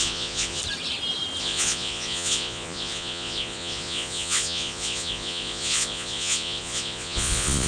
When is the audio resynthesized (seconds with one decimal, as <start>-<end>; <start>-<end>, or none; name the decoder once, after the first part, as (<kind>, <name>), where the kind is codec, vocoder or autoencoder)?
0.0-0.6 (vocoder, Vocos); 1.4-7.7